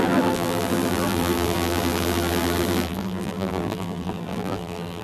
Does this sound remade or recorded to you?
remade